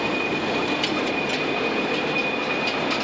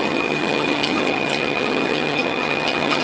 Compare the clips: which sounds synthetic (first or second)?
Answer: second